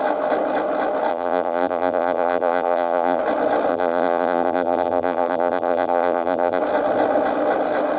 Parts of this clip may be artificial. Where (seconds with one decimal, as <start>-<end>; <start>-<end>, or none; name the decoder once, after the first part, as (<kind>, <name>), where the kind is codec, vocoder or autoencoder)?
1.1-3.2 (vocoder, BigVGAN v2); 3.7-6.6